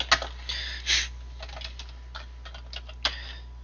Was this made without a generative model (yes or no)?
yes